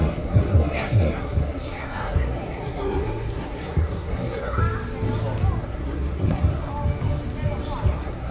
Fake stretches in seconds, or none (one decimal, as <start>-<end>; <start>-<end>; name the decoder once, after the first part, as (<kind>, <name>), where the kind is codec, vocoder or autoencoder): 0.0-4.6 (codec, SNAC); 5.6-6.7; 7.9-8.3